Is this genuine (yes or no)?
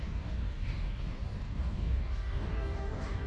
no